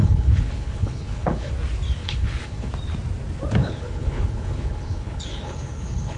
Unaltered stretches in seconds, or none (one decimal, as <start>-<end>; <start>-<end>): 1.5-2.0; 2.7-3.6